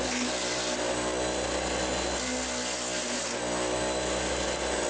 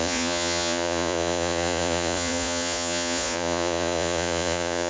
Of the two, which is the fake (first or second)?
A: second